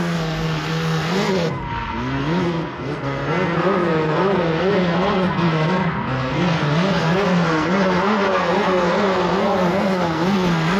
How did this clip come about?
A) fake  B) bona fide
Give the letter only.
A